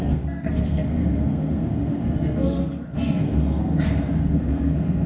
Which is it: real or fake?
fake